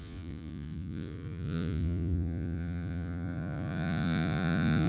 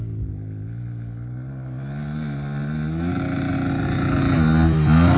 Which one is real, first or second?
second